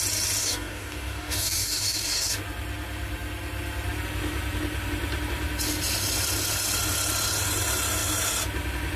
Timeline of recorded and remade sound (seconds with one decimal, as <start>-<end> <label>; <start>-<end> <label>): 0.0-0.4 recorded; 0.4-2.4 remade; 2.4-9.0 recorded